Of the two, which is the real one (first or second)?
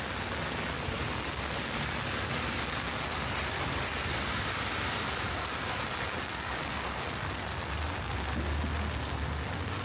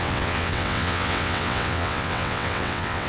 first